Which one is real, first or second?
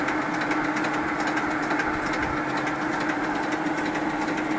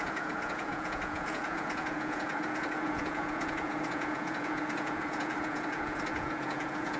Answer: first